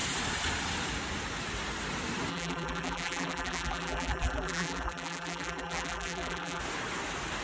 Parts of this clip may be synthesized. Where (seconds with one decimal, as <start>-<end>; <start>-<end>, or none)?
2.3-6.6